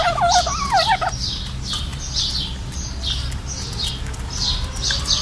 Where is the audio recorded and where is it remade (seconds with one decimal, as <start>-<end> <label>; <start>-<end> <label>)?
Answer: 0.0-5.2 recorded